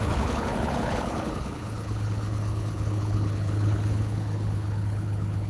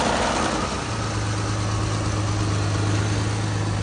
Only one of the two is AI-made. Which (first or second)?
first